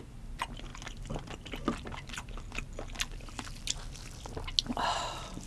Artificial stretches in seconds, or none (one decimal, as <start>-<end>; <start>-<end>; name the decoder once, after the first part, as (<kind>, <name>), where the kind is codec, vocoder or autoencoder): none